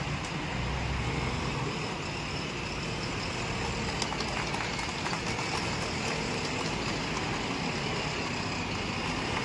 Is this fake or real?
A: real